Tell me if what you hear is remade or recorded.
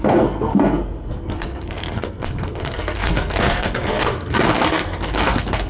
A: remade